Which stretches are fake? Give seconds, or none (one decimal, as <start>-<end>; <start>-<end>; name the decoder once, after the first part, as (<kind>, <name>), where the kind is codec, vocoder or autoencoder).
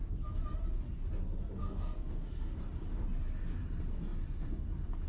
1.6-2.6 (codec, SNAC)